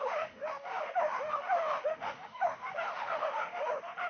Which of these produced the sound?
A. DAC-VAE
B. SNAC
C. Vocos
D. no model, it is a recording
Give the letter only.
A